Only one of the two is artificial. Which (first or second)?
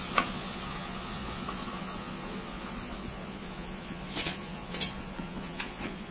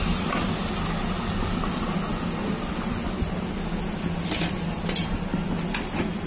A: first